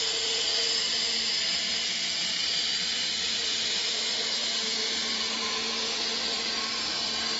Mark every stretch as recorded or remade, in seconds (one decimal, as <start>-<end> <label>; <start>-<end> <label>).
0.0-7.4 recorded